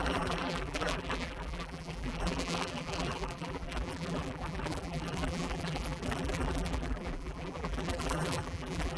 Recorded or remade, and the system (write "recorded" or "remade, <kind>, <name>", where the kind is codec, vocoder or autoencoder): remade, vocoder, BigVGAN v2